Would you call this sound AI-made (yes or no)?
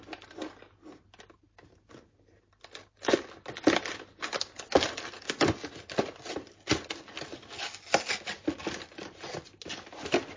no